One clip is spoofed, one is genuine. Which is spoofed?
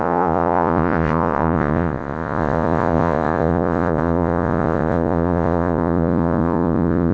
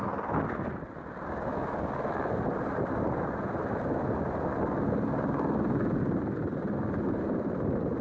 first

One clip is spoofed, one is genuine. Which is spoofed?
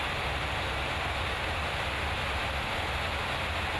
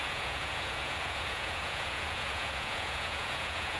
second